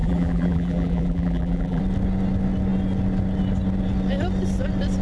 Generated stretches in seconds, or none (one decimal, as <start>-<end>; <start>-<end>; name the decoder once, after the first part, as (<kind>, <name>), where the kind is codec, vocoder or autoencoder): 0.0-1.8 (vocoder, BigVGAN v2)